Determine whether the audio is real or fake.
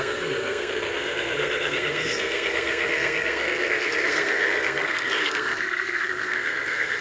fake